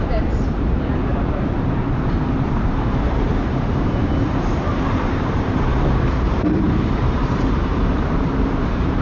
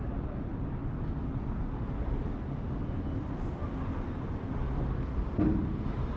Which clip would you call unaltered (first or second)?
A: second